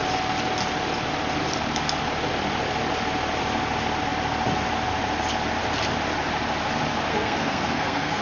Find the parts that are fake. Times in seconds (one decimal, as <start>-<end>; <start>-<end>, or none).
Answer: 7.1-8.2